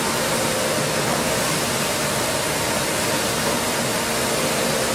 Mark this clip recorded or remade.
recorded